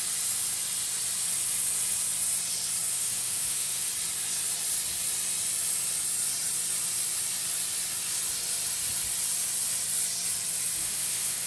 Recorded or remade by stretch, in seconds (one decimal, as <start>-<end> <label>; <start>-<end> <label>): 0.0-2.9 recorded; 2.9-3.9 remade; 3.9-10.8 recorded; 10.8-11.5 remade

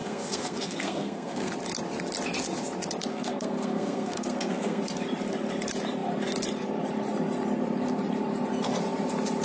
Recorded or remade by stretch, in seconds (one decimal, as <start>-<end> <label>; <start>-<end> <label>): 0.0-1.5 remade; 1.5-3.1 recorded; 3.1-4.8 remade; 4.8-9.4 recorded

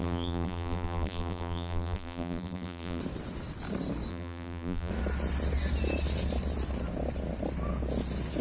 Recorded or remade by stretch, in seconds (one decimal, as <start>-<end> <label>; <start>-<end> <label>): 0.0-3.0 remade; 3.0-4.1 recorded; 4.1-4.9 remade; 4.9-8.4 recorded

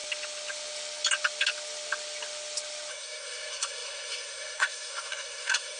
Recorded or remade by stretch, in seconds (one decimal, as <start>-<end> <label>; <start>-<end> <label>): 0.0-2.9 recorded; 2.9-5.8 remade

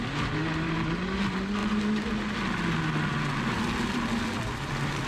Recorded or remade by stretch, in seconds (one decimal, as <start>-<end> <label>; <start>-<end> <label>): 0.0-5.1 recorded

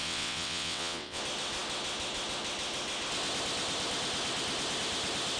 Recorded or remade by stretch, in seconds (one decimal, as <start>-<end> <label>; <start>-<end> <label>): 0.0-1.2 remade; 1.2-5.4 recorded